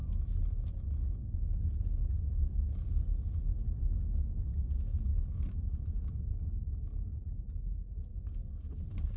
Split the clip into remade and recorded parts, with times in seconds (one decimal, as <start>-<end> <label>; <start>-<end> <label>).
0.0-4.9 recorded; 4.9-6.2 remade; 6.2-7.1 recorded; 7.1-8.2 remade; 8.2-9.2 recorded